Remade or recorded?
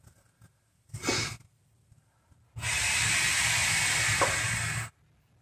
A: recorded